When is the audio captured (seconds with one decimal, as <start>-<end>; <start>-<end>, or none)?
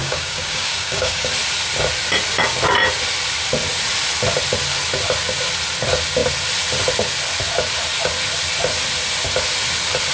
1.3-10.1